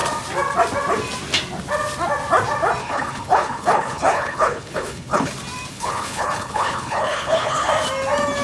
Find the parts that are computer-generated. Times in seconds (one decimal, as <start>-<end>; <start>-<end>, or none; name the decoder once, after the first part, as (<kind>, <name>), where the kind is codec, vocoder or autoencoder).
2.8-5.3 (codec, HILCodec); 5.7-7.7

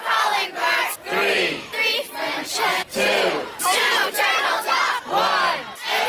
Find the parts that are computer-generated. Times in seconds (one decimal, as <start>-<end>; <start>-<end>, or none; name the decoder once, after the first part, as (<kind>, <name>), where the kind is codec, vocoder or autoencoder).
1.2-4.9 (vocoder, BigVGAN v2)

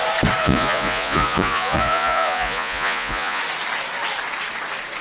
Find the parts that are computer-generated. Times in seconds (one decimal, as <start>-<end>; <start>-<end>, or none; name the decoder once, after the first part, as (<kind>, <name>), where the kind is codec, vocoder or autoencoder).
0.4-3.4 (vocoder, Vocos)

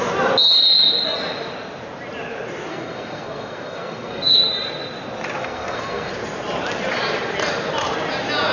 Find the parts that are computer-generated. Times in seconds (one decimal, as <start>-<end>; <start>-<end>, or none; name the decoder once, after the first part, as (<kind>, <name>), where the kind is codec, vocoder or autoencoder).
2.7-4.5 (codec, SNAC); 5.4-6.1

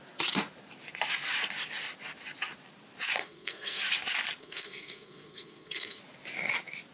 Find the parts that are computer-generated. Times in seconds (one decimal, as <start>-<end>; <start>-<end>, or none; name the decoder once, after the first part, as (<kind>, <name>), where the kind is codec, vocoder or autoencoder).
3.2-3.8 (codec, SNAC); 4.4-6.0

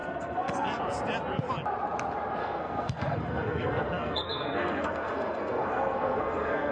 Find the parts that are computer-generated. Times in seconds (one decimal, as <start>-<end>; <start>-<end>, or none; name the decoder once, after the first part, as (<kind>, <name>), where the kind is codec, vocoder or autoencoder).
0.0-0.8 (codec, SNAC); 2.4-6.7

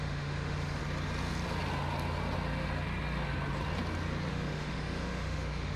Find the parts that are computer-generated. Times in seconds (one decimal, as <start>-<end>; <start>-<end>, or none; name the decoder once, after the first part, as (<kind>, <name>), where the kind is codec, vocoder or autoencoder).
0.0-0.8 (autoencoder, DAC-VAE); 4.3-5.8